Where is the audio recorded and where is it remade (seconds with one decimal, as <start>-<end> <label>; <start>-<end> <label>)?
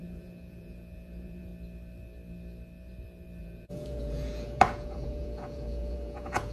0.0-1.5 remade; 1.5-3.4 recorded; 3.4-6.5 remade